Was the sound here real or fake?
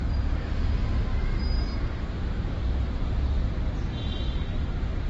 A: real